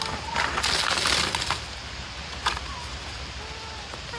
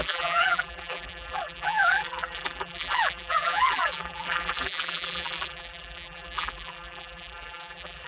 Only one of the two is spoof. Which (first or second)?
second